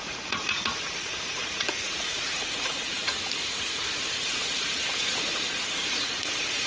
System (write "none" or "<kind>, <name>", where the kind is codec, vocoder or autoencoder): vocoder, Vocos